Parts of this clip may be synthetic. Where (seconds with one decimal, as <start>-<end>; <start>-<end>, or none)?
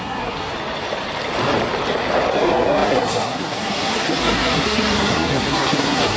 0.0-0.5; 2.3-6.2